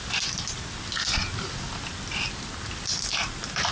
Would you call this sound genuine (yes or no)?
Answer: yes